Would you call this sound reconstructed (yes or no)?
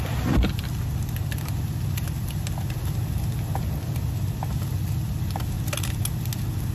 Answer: no